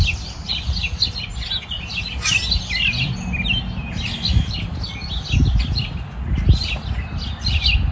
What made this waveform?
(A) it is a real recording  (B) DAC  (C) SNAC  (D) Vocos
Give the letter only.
A